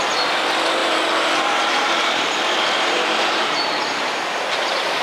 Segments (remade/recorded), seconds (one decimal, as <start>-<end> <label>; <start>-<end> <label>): 0.0-0.8 recorded; 0.8-3.8 remade; 3.8-5.0 recorded